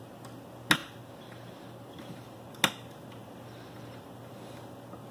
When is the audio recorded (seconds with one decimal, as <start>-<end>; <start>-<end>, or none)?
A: 0.0-0.8; 2.5-3.2; 4.4-5.1